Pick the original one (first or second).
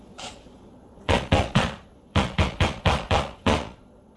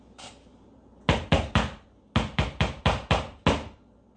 second